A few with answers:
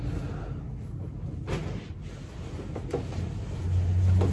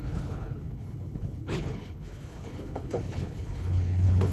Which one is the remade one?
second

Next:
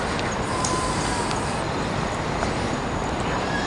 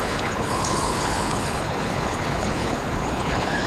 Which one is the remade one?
second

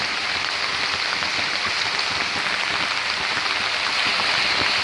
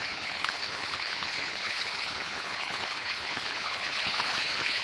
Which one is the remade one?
second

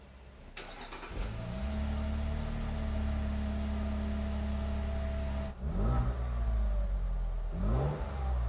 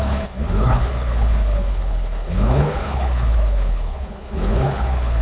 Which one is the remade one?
second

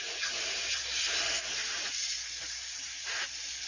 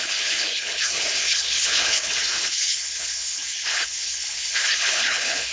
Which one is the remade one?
second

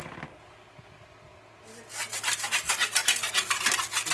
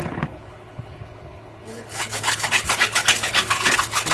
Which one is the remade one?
second